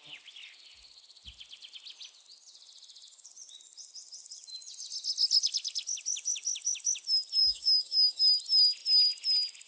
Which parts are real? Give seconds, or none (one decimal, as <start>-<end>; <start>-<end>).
0.0-7.4; 8.2-9.7